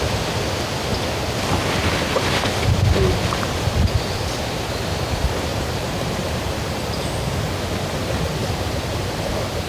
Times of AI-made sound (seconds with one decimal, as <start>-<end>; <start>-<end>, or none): 5.5-7.5; 8.4-9.7